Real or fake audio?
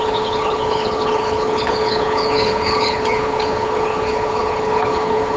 fake